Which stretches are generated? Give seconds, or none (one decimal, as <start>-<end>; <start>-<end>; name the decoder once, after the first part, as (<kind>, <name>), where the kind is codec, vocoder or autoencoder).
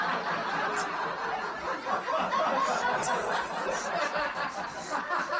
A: none